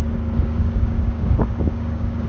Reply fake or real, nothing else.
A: fake